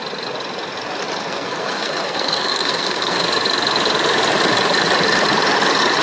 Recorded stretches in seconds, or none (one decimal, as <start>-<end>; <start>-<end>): 0.0-1.2; 3.2-6.0